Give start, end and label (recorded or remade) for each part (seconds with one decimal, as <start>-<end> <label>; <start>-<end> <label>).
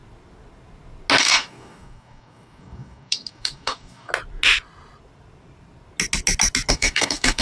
0.0-1.2 recorded; 1.2-4.1 remade; 4.1-6.7 recorded; 6.7-7.4 remade